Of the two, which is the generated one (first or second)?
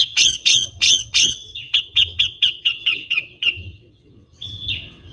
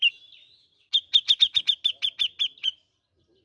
first